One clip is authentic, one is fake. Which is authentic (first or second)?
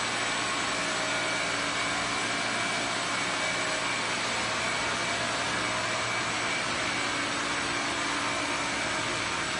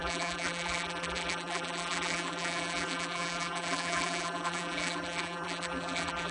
first